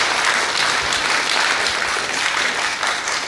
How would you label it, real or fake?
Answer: real